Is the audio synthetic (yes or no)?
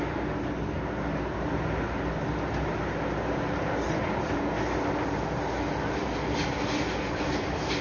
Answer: no